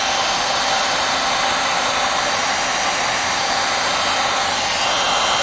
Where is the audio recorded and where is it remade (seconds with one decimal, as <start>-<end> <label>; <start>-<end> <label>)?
0.0-0.8 recorded; 0.8-4.0 remade; 4.0-5.4 recorded